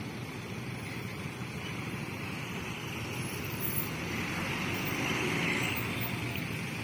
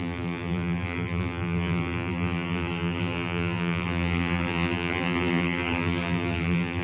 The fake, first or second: second